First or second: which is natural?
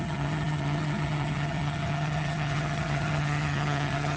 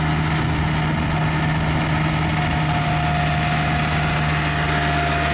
second